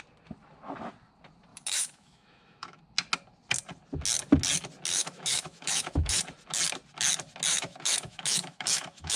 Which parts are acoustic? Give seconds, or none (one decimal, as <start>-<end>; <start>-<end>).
0.0-1.5; 2.8-4.9; 6.2-7.5